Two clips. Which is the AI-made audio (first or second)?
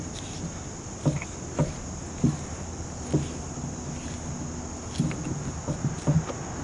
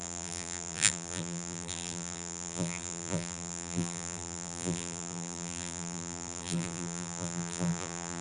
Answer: second